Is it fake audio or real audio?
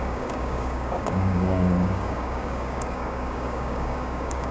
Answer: fake